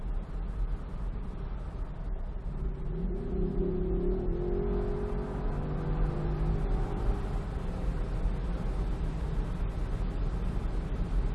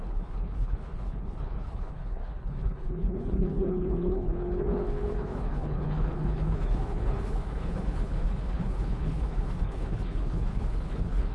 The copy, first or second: second